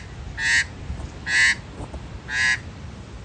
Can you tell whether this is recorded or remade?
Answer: recorded